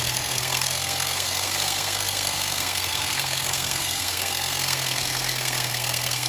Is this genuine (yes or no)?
no